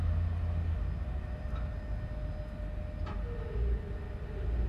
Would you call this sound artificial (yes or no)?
no